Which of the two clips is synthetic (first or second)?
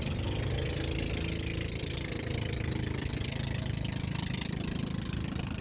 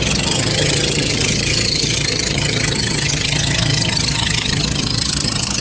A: second